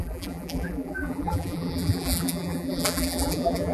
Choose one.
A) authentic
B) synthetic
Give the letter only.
B